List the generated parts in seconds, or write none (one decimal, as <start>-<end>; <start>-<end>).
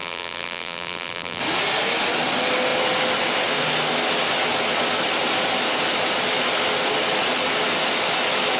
0.0-1.4